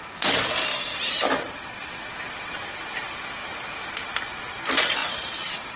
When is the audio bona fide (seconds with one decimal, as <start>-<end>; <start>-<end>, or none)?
0.0-5.0